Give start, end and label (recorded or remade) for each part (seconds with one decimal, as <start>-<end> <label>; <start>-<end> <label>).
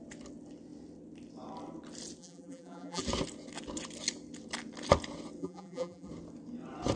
0.0-2.2 recorded; 2.2-3.0 remade; 3.0-5.4 recorded; 5.4-6.1 remade; 6.1-7.0 recorded